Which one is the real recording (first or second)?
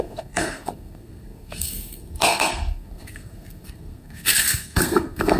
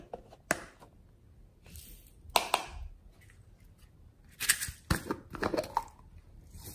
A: second